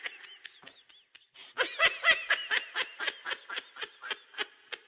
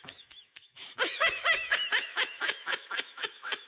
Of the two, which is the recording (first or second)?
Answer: first